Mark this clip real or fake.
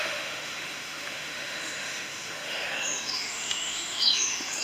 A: fake